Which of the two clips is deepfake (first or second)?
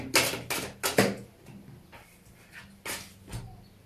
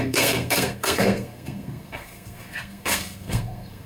second